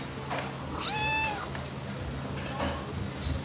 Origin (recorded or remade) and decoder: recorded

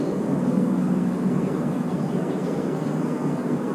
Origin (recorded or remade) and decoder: remade, codec, SNAC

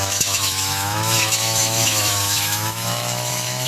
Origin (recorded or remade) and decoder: remade, autoencoder, DAC-VAE